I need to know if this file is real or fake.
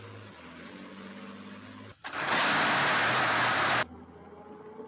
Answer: real